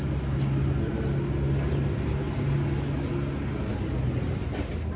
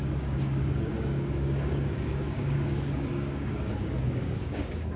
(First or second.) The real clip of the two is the first